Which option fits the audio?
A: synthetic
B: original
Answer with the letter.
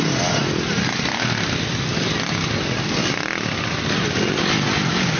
B